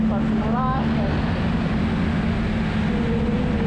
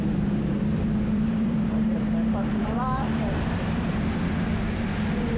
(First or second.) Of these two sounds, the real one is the first